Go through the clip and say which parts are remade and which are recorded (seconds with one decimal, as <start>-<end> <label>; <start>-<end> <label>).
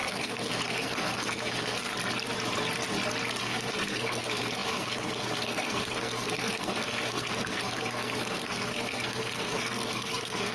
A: 0.0-1.9 remade; 1.9-3.4 recorded; 3.4-10.5 remade